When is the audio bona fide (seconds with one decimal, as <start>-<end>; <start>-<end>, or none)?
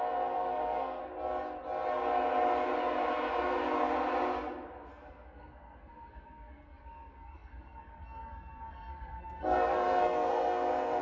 1.0-4.9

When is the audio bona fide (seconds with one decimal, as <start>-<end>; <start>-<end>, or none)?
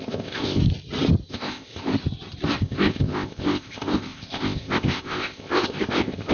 0.6-1.3; 1.9-2.6